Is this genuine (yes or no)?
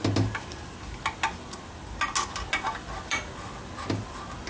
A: yes